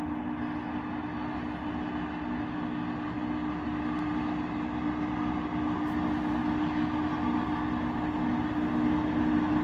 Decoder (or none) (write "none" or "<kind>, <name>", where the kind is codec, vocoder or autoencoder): none